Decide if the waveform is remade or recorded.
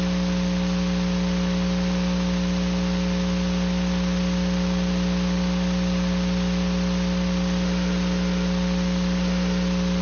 recorded